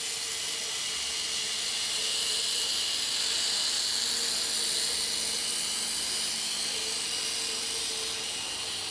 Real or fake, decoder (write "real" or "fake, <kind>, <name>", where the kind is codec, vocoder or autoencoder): real